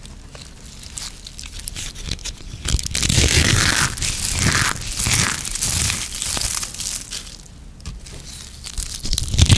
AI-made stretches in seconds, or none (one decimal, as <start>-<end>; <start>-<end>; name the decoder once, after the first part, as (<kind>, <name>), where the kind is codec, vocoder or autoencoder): 3.1-3.8 (codec, SNAC)